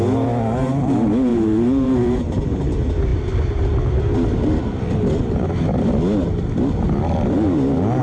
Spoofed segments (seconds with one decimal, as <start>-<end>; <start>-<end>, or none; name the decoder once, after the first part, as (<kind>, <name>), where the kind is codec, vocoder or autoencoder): 1.3-2.3 (vocoder, BigVGAN v2)